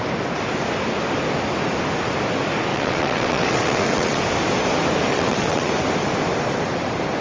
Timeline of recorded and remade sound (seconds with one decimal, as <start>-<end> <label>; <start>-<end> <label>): 0.0-2.7 recorded; 2.7-4.2 remade; 4.2-5.1 recorded; 5.1-5.7 remade; 5.7-7.2 recorded